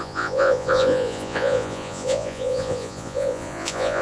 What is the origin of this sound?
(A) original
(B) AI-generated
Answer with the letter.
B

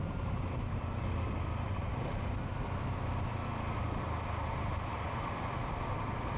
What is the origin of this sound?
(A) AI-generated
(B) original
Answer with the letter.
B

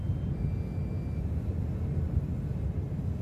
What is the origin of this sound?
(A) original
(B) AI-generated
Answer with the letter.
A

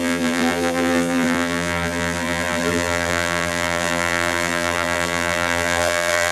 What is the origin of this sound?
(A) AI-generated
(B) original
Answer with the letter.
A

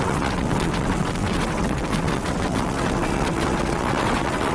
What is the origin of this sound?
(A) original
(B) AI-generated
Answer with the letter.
B